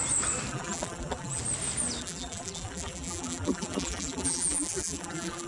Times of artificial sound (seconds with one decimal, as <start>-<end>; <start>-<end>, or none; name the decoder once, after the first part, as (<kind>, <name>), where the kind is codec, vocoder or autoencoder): 0.5-1.4 (vocoder, BigVGAN v2); 2.0-5.5